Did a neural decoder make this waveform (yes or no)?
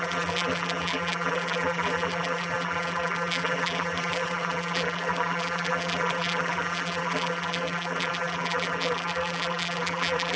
yes